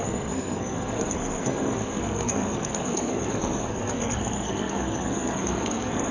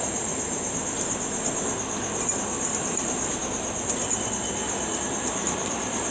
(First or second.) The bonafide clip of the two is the second